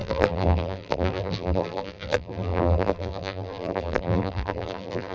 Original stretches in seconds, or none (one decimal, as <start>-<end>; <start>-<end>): none